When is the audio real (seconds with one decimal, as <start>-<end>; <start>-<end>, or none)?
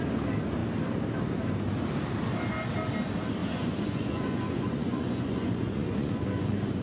0.0-3.4